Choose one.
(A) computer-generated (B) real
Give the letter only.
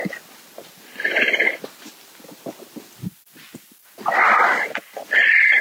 B